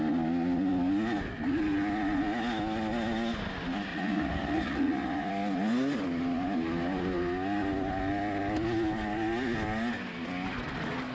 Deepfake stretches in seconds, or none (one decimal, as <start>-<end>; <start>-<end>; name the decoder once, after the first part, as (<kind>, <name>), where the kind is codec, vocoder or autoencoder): 3.9-5.3 (vocoder, Vocos)